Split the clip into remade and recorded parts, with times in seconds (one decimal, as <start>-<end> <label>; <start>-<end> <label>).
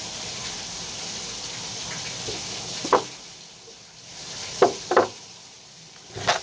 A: 0.0-1.2 remade; 1.2-2.9 recorded; 2.9-5.6 remade; 5.6-6.4 recorded